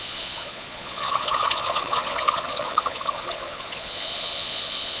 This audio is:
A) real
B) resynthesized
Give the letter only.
B